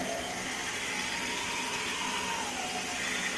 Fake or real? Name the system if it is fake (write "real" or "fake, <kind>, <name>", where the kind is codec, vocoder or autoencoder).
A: real